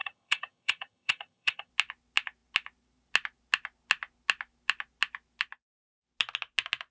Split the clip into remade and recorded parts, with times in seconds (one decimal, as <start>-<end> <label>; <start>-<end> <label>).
0.0-1.7 remade; 1.7-6.9 recorded